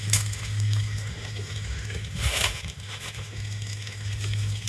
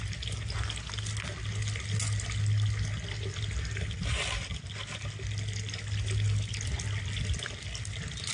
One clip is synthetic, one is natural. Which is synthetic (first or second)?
first